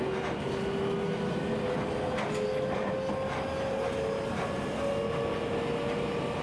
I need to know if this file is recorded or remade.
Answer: recorded